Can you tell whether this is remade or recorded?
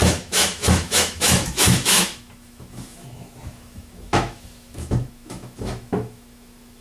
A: remade